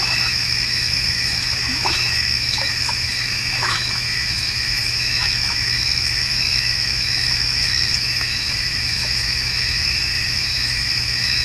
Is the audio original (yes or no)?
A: no